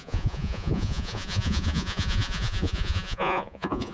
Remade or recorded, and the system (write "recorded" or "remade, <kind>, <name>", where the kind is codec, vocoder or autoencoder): remade, vocoder, Vocos